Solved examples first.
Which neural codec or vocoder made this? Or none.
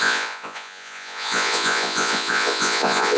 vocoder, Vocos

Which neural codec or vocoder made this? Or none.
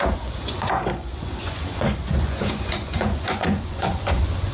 vocoder, Vocos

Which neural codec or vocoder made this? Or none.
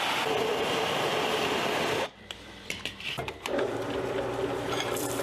vocoder, BigVGAN v2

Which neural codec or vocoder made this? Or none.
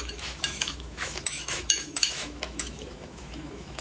autoencoder, DAC-VAE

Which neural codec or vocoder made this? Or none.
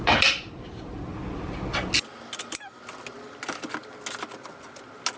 none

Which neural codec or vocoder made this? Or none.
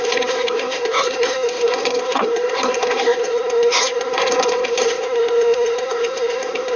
codec, SNAC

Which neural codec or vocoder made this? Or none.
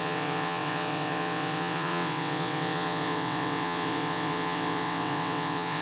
vocoder, WaveNeXt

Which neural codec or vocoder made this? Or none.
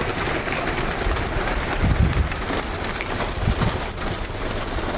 none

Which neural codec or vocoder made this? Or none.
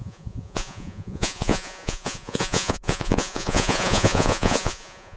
vocoder, Vocos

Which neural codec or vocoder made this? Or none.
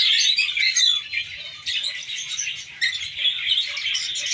none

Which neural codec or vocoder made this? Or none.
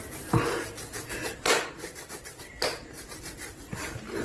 none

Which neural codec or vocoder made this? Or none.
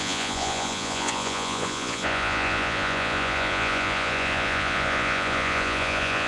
vocoder, Vocos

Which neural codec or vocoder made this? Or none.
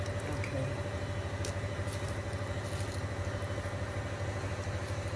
none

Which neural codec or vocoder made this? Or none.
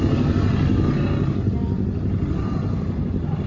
none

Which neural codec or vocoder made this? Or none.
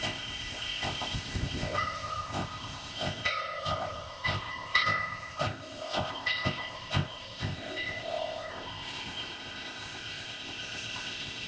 codec, ZipCodec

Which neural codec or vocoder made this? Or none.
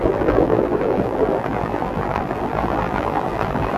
vocoder, BigVGAN v2